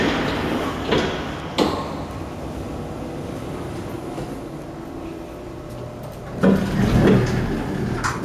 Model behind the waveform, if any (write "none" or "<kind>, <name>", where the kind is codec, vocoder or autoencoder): none